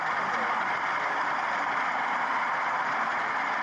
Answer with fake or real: real